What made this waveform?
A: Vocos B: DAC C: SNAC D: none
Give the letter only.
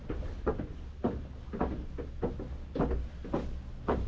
D